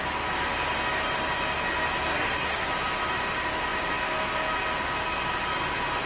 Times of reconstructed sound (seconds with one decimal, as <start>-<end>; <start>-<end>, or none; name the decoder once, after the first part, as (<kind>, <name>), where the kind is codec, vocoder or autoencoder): 2.1-2.7 (codec, SNAC)